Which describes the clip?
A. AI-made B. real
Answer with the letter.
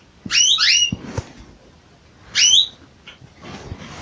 B